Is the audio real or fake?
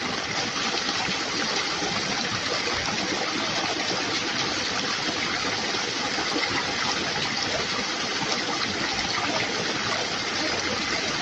real